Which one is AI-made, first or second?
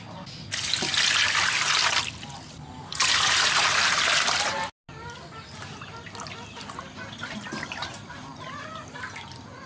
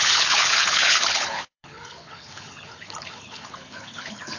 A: second